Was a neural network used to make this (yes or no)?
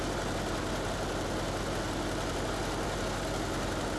no